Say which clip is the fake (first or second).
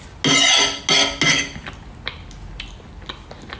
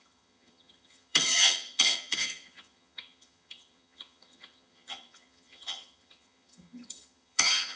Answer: second